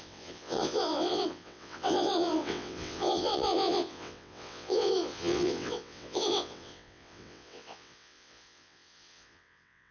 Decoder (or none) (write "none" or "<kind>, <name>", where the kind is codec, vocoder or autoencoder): vocoder, WaveNeXt